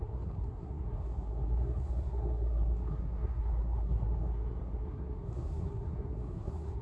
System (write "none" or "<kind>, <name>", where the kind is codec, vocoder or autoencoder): codec, SNAC